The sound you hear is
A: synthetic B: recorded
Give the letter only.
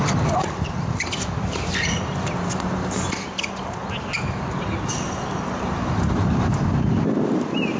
B